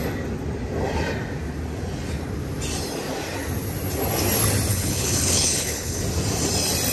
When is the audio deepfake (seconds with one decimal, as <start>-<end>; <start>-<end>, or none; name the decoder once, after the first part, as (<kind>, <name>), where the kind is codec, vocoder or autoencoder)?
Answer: 4.7-6.0 (codec, HILCodec)